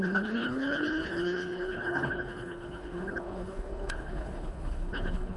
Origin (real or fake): fake